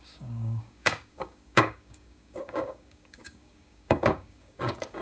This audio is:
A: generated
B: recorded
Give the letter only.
A